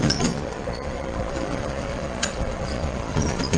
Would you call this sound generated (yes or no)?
yes